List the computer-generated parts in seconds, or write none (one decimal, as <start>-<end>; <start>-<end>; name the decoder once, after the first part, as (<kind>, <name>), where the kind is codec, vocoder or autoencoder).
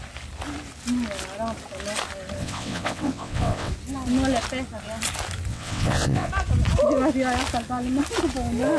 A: 2.4-3.7 (vocoder, WaveNeXt); 5.5-6.3